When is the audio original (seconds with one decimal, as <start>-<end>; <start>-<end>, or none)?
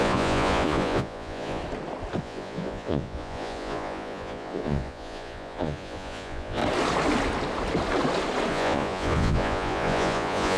1.6-2.2; 6.6-8.5